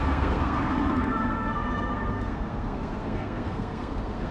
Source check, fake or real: fake